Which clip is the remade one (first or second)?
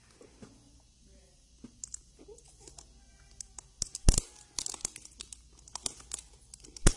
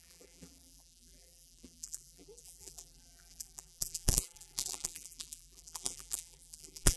second